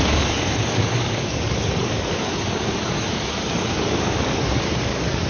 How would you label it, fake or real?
fake